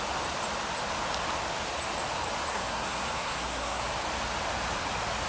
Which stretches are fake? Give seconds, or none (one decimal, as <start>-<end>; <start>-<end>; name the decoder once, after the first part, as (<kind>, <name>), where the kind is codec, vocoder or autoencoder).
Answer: 2.5-3.8 (codec, SNAC)